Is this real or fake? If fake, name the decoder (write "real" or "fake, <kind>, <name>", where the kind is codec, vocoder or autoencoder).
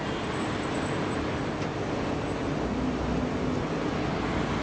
real